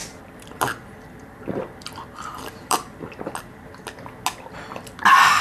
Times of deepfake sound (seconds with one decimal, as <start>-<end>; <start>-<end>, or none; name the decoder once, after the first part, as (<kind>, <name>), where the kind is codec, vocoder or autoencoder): 0.0-3.2 (vocoder, BigVGAN v2)